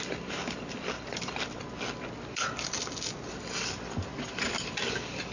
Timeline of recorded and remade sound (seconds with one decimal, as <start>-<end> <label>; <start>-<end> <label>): 0.0-5.3 recorded